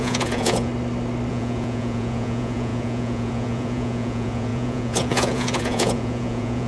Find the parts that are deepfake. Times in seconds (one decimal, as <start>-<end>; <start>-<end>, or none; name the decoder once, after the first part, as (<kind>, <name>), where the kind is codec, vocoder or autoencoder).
0.0-0.7 (vocoder, Vocos); 1.3-6.7